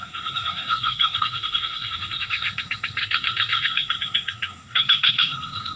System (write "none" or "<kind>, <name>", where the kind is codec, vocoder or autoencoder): codec, SNAC